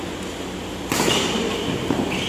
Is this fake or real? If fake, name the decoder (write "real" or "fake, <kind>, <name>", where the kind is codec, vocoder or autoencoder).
real